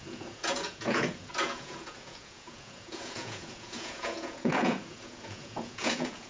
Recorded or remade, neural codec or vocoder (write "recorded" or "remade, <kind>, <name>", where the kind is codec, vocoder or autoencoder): remade, vocoder, Vocos